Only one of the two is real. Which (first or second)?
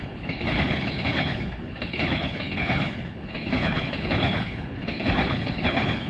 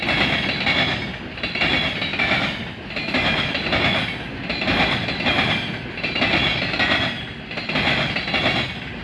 second